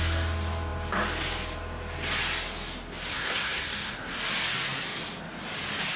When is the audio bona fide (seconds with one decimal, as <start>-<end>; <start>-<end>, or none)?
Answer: 0.0-3.1; 4.2-6.0